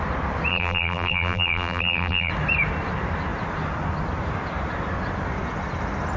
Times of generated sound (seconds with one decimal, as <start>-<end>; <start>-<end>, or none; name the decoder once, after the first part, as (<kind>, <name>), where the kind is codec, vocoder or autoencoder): 0.5-2.3 (vocoder, BigVGAN v2)